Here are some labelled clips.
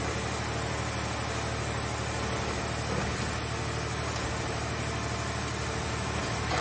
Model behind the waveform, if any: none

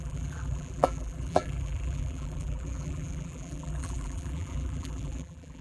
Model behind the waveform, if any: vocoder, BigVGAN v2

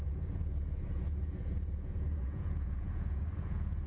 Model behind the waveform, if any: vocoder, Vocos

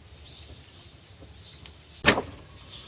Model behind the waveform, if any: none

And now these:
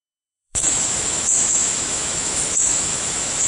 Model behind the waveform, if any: autoencoder, DAC-VAE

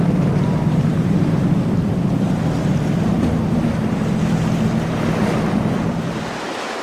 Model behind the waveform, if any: vocoder, BigVGAN v2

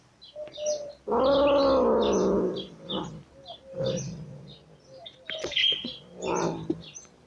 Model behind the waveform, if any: none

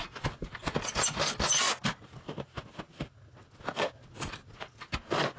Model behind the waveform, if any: none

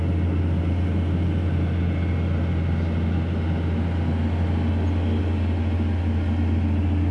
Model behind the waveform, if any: none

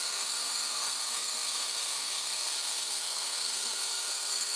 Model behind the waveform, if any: codec, SNAC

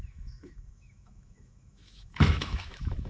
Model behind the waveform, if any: autoencoder, DAC-VAE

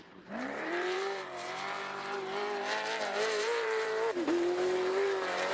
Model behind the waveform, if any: vocoder, BigVGAN v2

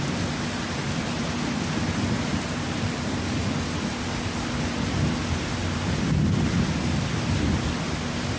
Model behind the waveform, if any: none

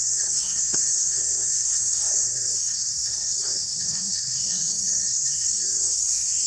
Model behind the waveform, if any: codec, SNAC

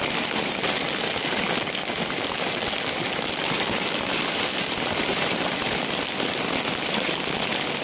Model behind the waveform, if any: none